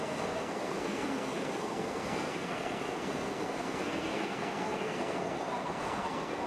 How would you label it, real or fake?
fake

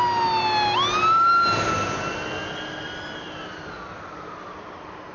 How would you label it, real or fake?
real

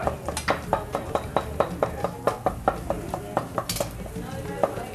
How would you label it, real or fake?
real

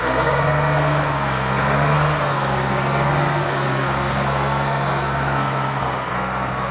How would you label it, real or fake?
fake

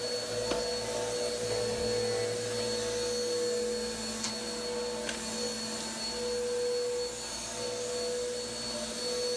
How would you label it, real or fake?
real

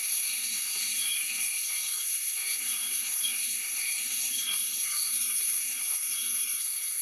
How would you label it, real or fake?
fake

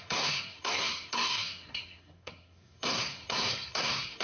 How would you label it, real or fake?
fake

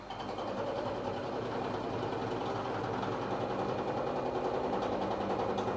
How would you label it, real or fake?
real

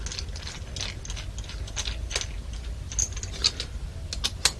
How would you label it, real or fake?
real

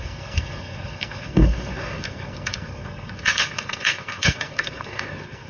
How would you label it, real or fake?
fake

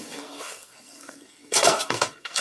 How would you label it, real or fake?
fake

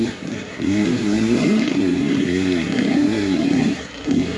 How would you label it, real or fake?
fake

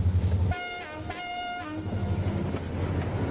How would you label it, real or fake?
real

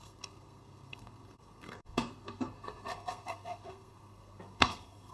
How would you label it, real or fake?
fake